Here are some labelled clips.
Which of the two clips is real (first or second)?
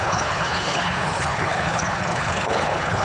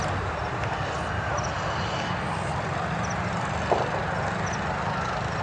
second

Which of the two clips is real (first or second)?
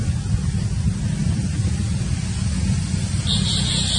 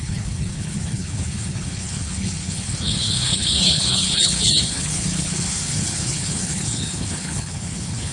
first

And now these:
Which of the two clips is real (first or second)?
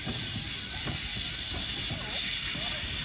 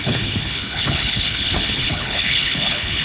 first